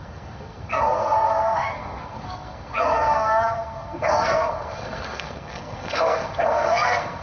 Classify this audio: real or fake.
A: fake